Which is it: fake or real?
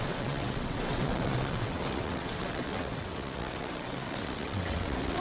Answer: fake